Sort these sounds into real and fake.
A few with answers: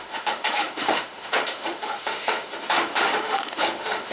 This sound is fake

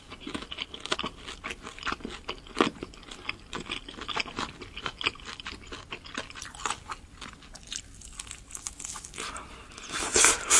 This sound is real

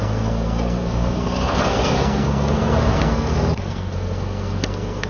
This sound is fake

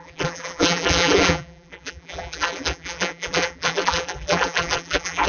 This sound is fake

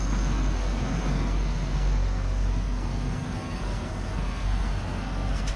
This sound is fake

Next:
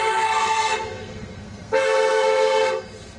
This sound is fake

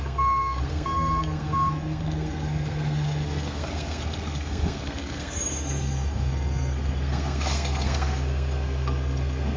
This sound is fake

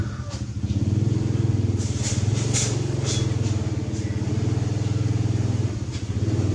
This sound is real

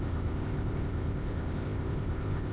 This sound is fake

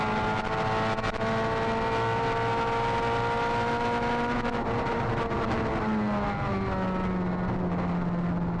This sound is real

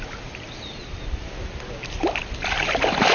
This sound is real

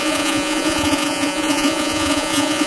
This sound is fake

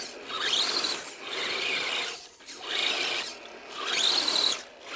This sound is real